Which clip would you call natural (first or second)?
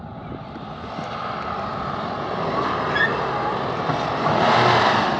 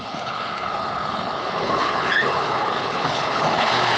first